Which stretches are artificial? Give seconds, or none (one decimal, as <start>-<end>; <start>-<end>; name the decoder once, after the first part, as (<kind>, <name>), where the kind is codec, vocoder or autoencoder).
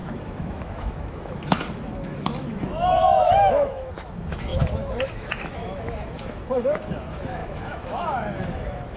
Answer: 0.0-9.0 (autoencoder, DAC-VAE)